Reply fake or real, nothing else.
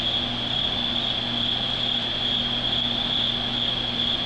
real